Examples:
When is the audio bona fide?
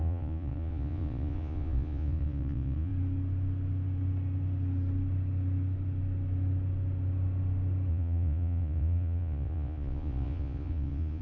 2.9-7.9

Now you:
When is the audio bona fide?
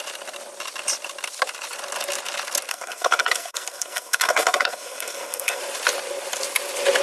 0.0-2.7; 5.6-7.0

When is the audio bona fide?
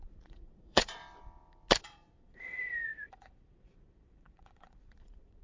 1.0-1.8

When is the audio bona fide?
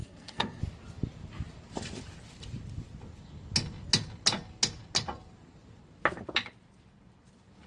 0.6-7.7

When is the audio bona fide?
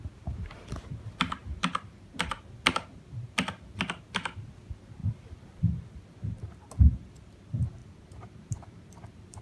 0.0-5.0; 6.7-7.8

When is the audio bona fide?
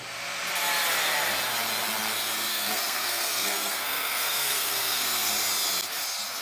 0.0-2.5; 5.3-6.4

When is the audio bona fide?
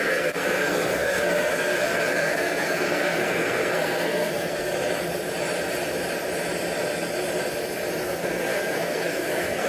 4.7-8.0